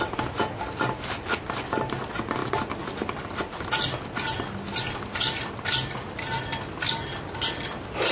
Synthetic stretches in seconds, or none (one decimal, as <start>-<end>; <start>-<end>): none